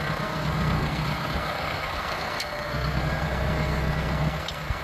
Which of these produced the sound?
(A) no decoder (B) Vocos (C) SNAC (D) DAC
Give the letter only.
C